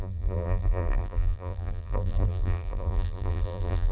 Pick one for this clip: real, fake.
fake